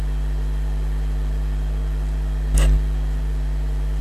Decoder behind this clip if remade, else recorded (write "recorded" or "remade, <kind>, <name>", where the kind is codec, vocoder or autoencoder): recorded